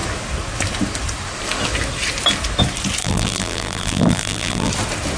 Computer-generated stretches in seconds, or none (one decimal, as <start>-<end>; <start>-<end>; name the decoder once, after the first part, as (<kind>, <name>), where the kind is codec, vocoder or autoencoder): 3.0-4.7 (vocoder, BigVGAN v2)